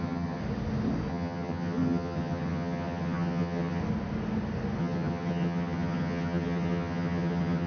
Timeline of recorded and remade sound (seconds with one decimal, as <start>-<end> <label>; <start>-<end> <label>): 0.0-0.4 remade; 0.4-1.1 recorded; 1.1-3.8 remade; 3.8-4.8 recorded; 4.8-7.7 remade